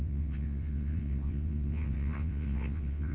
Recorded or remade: remade